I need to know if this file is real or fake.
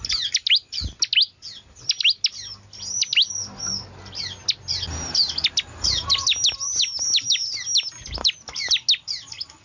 real